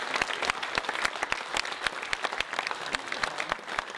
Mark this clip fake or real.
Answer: real